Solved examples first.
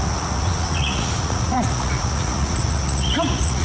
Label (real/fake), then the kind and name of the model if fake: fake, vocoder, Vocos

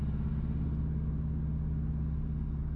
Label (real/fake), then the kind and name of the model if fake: real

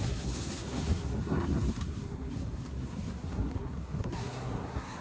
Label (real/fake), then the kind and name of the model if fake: fake, codec, SNAC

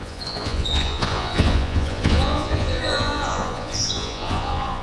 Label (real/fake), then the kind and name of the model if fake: fake, vocoder, Vocos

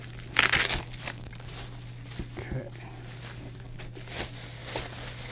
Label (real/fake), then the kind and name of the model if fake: real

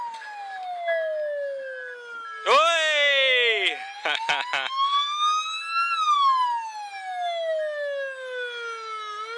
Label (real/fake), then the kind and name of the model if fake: real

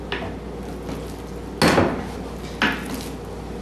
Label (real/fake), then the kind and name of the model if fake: real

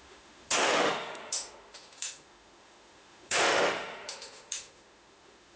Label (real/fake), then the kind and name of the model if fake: fake, autoencoder, DAC-VAE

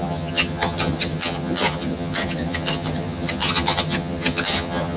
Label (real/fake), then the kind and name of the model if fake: fake, vocoder, HiFi-GAN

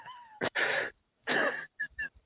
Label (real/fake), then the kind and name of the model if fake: fake, vocoder, BigVGAN v2